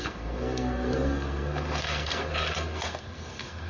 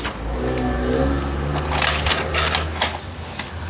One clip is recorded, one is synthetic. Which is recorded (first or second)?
second